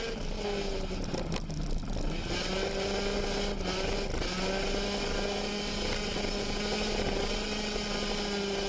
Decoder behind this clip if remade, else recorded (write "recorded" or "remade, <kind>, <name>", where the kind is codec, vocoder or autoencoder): recorded